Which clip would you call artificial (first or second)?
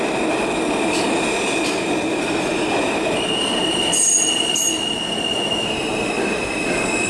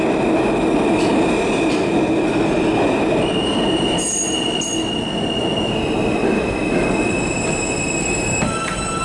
first